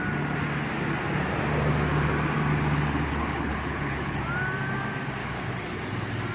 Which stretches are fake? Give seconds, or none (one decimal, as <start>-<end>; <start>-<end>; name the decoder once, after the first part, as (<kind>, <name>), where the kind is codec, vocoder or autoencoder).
3.1-4.2 (codec, HILCodec); 5.2-5.8